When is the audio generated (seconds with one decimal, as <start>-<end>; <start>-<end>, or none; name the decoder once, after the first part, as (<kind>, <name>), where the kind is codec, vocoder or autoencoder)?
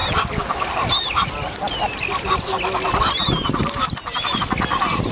none